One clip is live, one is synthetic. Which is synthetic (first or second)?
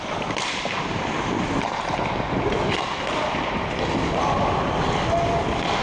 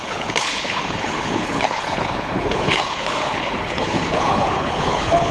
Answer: second